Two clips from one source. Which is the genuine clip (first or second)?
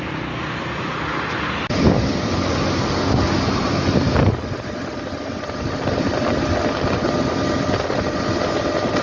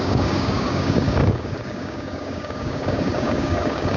first